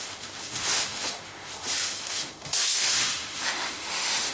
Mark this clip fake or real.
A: fake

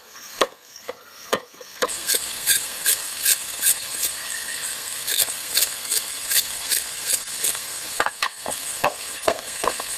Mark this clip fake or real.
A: fake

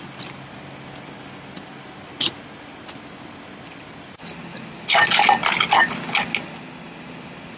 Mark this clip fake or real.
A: real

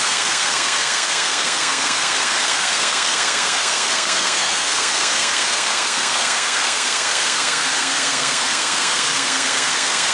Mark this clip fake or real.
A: fake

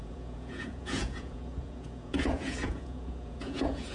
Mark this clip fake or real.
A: fake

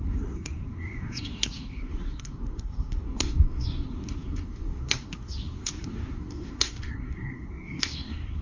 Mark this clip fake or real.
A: fake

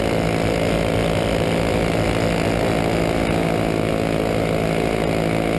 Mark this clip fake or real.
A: real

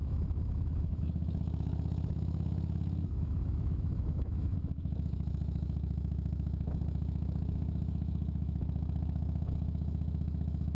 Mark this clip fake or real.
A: fake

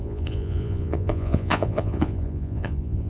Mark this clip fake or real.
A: fake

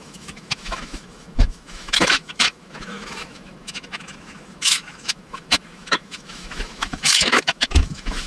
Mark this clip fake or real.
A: fake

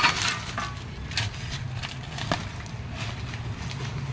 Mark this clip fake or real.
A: real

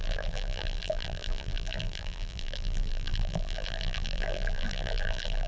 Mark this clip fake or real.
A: fake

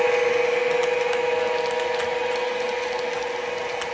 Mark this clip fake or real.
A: real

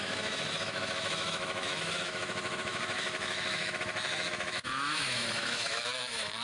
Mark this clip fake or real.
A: fake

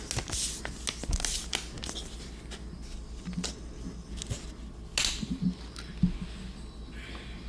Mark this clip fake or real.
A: real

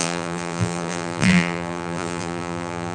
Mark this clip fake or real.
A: fake